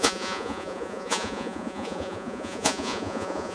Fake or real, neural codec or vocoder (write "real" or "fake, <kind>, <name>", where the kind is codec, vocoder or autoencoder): fake, vocoder, Vocos